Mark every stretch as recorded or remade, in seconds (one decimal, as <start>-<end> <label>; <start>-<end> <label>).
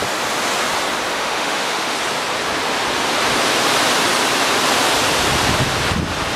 0.0-1.1 recorded; 1.1-2.0 remade; 2.0-6.4 recorded